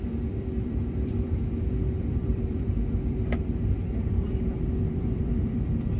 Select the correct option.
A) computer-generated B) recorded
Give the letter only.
A